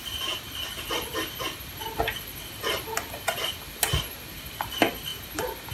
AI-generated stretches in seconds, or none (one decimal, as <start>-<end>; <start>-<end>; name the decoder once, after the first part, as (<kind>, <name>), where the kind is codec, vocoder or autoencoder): none